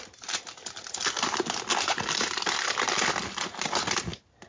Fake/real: real